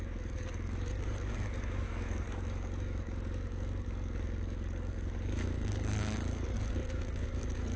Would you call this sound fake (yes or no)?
yes